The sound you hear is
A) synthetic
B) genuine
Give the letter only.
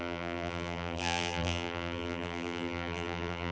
A